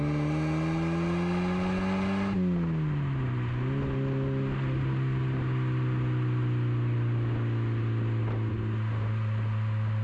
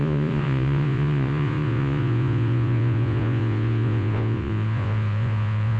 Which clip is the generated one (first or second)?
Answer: second